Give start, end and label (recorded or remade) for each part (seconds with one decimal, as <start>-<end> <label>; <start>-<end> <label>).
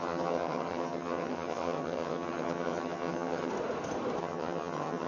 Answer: 0.0-3.5 remade; 3.5-4.2 recorded; 4.2-5.1 remade